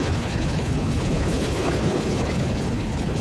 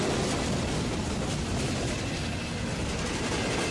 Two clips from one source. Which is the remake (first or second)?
first